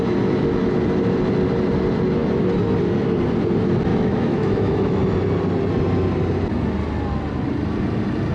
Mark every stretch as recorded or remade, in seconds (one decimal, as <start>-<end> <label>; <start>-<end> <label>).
0.0-3.9 recorded; 3.9-5.0 remade; 5.0-8.3 recorded